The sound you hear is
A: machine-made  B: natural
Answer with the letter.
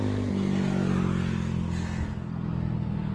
B